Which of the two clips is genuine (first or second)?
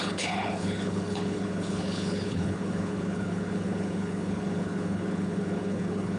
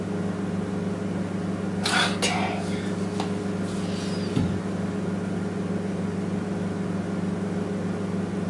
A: second